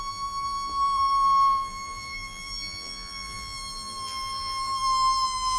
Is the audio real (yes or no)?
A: no